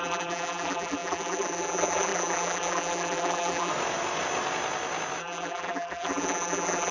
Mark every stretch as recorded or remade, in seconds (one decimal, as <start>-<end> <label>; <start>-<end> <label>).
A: 0.0-3.7 remade; 3.7-5.2 recorded; 5.2-6.9 remade